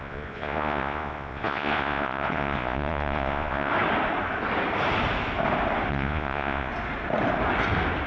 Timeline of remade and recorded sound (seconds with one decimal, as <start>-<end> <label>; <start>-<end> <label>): 0.0-3.7 remade; 3.7-5.9 recorded; 5.9-6.7 remade; 6.7-8.1 recorded